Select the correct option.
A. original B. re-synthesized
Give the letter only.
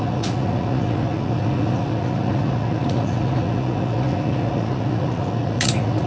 B